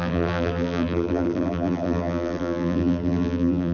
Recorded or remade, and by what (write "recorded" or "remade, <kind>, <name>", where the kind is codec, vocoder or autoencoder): remade, vocoder, BigVGAN v2